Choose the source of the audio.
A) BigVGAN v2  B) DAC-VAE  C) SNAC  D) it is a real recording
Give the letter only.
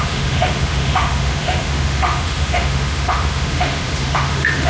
B